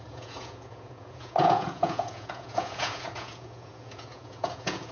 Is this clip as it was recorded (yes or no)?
no